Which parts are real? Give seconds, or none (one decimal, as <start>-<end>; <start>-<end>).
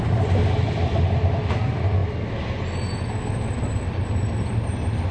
2.0-3.3